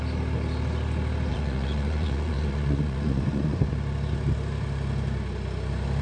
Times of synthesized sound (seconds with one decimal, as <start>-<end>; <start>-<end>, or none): 1.3-3.6

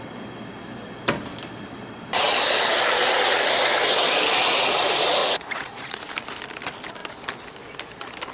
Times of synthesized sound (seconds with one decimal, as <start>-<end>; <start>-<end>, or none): 5.2-6.0

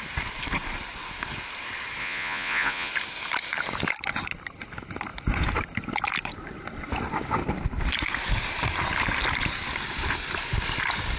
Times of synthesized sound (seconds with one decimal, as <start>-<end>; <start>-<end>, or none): 2.0-2.9